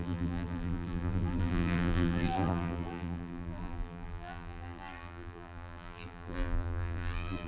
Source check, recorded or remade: remade